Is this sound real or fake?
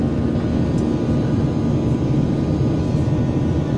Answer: real